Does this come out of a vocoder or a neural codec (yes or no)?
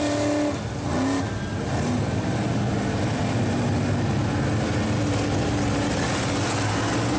no